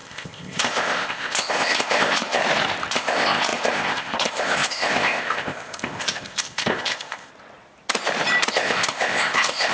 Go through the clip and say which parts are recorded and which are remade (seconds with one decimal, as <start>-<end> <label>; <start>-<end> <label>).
0.0-2.4 remade; 2.4-2.9 recorded; 2.9-7.3 remade; 7.3-8.5 recorded; 8.5-9.7 remade